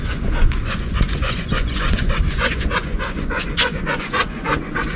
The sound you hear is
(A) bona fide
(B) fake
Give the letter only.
B